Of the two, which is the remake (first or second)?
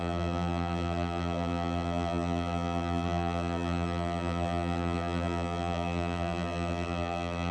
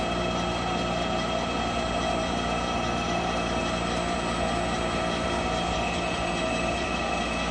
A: first